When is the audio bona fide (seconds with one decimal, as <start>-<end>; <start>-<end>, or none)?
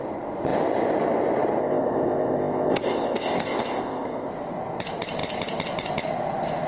0.0-1.6; 4.3-6.7